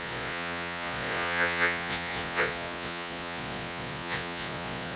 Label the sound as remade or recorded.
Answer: remade